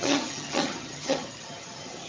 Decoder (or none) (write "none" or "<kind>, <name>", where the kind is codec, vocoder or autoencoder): vocoder, HiFi-GAN